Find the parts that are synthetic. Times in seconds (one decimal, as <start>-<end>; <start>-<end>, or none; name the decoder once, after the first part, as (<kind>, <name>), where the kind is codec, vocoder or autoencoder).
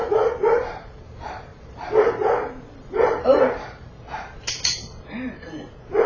0.0-6.1 (vocoder, BigVGAN v2)